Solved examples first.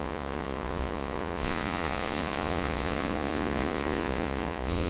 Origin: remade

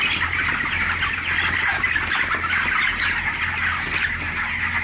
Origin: recorded